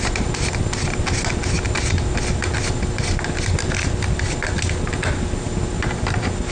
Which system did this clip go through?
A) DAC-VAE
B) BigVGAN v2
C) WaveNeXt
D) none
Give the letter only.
D